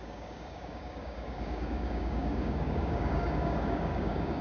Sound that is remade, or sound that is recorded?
remade